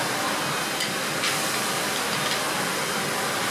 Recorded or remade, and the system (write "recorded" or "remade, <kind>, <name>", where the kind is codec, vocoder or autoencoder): recorded